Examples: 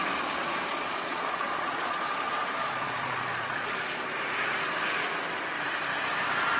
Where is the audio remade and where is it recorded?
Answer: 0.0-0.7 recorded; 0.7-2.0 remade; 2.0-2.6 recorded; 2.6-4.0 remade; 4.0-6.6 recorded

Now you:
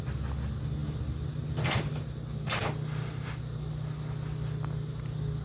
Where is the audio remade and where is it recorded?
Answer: 0.0-5.4 recorded

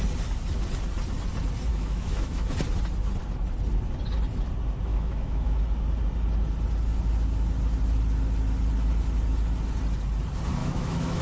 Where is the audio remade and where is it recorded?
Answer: 0.0-1.7 recorded; 1.7-2.5 remade; 2.5-4.9 recorded; 4.9-5.6 remade; 5.6-10.6 recorded; 10.6-11.2 remade

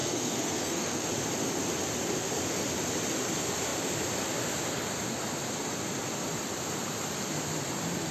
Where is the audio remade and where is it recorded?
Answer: 0.0-1.0 remade; 1.0-8.1 recorded

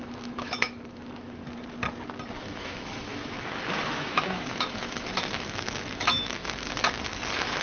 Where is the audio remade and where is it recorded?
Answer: 0.0-1.4 remade; 1.4-2.4 recorded; 2.4-7.6 remade